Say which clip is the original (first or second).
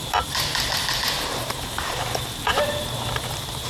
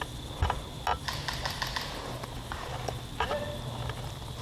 second